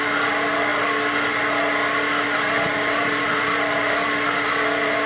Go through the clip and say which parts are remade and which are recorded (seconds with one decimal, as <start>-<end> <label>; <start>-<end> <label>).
0.0-5.1 recorded